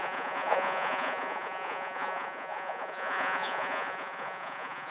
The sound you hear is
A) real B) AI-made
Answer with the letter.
B